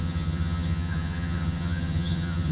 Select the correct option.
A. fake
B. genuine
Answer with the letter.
A